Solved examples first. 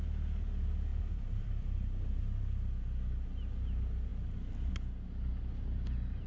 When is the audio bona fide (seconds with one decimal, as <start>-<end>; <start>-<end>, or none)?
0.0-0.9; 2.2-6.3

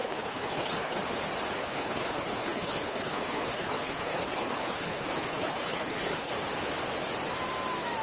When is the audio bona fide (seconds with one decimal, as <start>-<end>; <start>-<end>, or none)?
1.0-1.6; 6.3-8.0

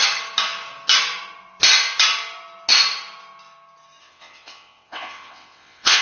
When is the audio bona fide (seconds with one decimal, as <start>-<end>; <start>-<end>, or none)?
0.0-4.0

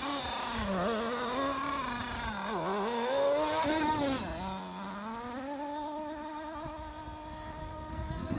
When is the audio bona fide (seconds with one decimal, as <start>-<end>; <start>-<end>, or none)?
0.0-7.6

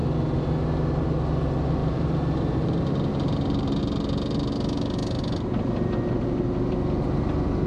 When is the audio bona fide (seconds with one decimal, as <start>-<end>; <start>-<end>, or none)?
0.0-1.8; 2.7-3.1; 3.8-7.7

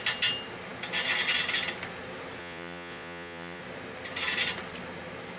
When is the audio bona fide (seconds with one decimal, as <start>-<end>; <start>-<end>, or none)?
0.0-2.4; 3.6-5.4

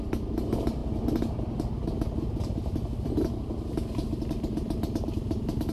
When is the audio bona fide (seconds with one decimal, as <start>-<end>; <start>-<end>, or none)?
0.0-5.7

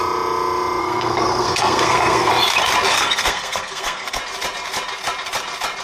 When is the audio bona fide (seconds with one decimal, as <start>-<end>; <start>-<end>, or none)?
0.0-0.8; 2.3-2.9; 4.2-5.8